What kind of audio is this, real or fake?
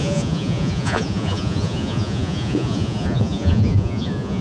fake